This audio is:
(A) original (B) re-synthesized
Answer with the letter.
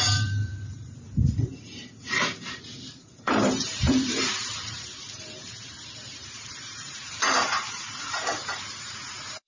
B